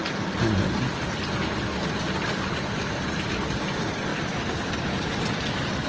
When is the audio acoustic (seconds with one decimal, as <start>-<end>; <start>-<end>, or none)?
0.0-5.9